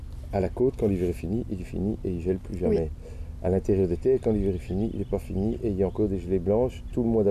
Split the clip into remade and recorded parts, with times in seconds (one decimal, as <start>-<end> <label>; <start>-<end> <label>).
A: 0.0-7.3 recorded